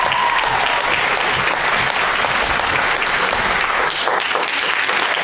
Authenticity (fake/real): real